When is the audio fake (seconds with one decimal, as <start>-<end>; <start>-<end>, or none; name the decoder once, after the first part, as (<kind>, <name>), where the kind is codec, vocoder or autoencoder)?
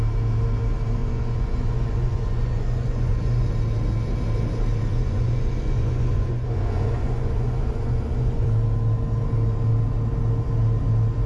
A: 1.0-3.5 (vocoder, Vocos); 4.9-8.5